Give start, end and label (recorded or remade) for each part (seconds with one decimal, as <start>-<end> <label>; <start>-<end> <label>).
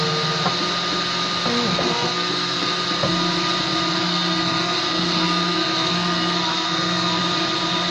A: 0.0-1.7 recorded; 1.7-2.7 remade; 2.7-3.9 recorded; 3.9-7.2 remade; 7.2-7.9 recorded